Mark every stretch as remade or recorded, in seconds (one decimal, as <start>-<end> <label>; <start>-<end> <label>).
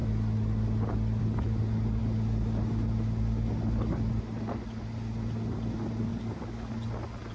0.0-6.1 recorded; 6.1-6.7 remade; 6.7-7.3 recorded